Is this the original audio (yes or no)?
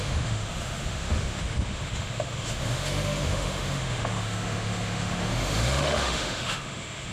no